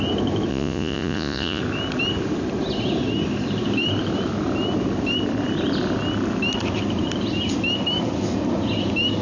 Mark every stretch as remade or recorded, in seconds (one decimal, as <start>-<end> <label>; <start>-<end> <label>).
0.0-0.5 recorded; 0.5-1.6 remade; 1.6-9.2 recorded